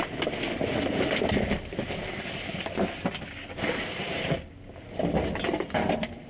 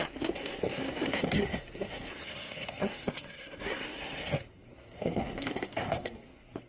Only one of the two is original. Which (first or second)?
first